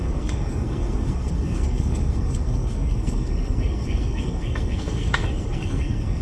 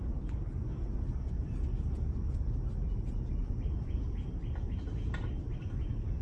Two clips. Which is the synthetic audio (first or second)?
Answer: first